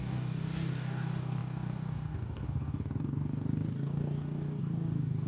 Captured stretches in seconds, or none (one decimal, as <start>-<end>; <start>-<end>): none